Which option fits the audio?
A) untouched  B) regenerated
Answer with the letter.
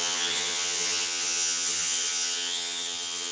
B